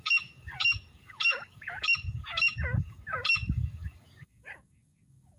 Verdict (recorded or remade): remade